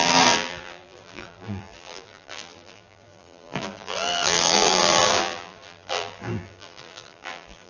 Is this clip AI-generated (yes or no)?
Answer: yes